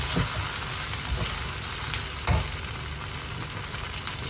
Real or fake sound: real